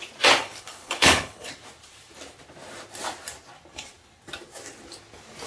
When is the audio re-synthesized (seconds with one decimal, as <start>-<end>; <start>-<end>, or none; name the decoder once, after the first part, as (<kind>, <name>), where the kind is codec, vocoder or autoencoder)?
0.4-1.5 (codec, HILCodec)